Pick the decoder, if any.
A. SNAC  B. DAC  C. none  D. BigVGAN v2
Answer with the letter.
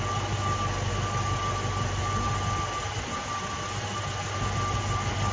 C